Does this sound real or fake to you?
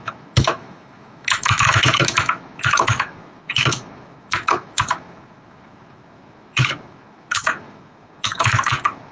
fake